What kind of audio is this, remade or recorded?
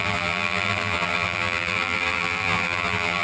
remade